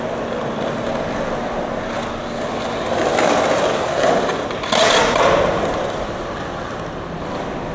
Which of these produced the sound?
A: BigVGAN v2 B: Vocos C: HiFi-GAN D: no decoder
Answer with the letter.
D